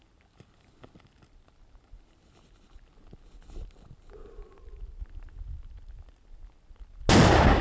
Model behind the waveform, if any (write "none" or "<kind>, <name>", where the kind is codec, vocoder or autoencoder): none